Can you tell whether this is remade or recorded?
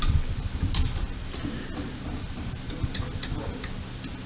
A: recorded